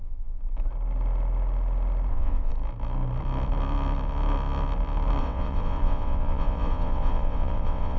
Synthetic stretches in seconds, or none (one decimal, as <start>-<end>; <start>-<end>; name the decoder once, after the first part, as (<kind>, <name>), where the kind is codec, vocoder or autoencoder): 0.0-0.4 (vocoder, WaveNeXt); 2.1-2.5; 5.2-8.0